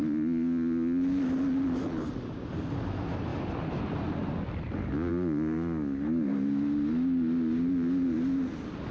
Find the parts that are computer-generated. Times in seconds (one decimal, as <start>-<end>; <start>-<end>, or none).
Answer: none